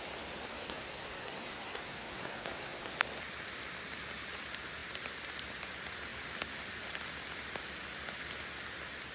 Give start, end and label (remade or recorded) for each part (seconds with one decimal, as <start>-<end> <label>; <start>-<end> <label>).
0.0-0.5 recorded; 0.5-2.9 remade; 2.9-9.1 recorded